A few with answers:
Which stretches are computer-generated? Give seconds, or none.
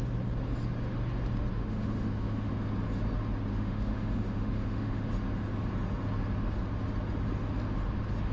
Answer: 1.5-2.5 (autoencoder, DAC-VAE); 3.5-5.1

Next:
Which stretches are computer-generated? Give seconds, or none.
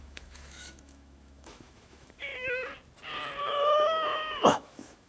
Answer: 0.0-2.3 (autoencoder, DAC-VAE); 3.4-5.1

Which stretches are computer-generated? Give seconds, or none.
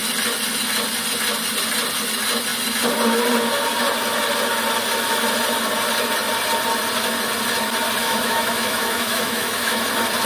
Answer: 8.0-9.8 (autoencoder, DAC-VAE)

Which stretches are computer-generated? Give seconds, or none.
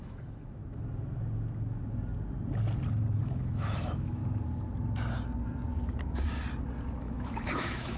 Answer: 0.0-0.6 (autoencoder, DAC-VAE); 3.2-4.2; 7.0-8.0